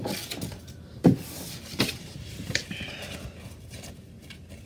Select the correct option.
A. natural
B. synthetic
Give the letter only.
A